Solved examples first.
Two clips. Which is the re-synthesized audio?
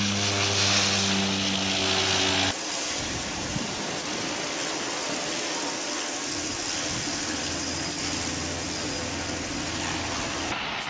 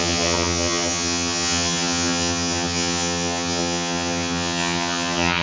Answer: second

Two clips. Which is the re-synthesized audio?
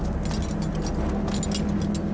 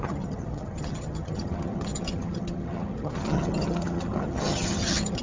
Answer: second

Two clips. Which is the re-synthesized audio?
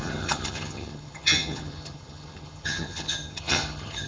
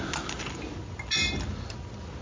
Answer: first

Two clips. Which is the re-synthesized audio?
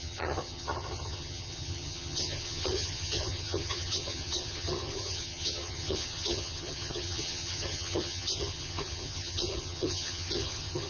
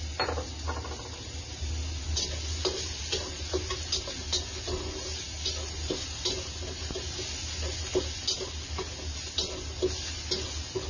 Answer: first